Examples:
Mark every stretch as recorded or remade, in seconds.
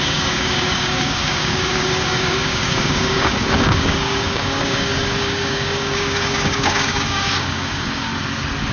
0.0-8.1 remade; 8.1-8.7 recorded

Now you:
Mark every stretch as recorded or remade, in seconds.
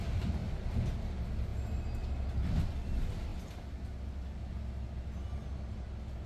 0.0-6.3 recorded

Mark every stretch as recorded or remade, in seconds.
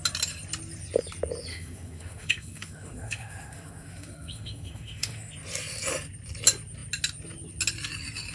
0.0-1.5 recorded; 1.5-5.3 remade; 5.3-8.3 recorded